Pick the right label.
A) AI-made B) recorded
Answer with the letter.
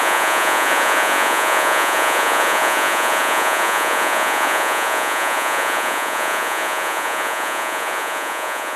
A